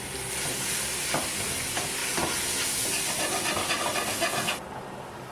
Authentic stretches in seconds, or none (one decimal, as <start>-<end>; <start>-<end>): 0.0-5.3